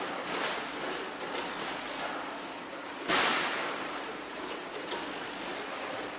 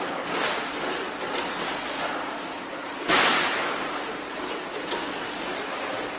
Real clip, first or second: second